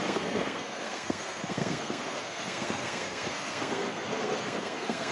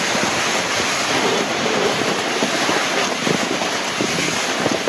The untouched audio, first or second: second